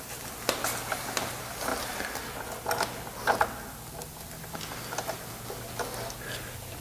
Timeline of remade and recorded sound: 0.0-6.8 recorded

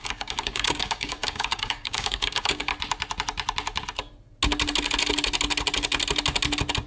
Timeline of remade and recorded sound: 0.0-2.7 remade; 2.7-6.9 recorded

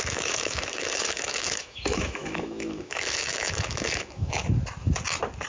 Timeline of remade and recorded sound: 0.0-4.4 remade; 4.4-5.5 recorded

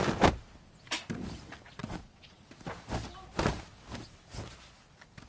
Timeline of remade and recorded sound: 0.0-1.8 recorded; 1.8-2.5 remade; 2.5-5.3 recorded

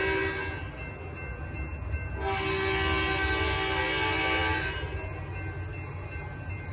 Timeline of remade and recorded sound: 0.0-6.7 recorded